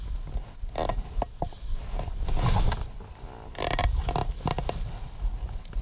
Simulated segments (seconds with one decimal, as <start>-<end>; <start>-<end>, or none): none